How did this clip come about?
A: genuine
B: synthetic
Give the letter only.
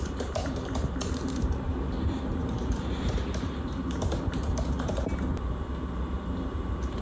B